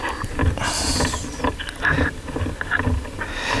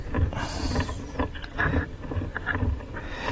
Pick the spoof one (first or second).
second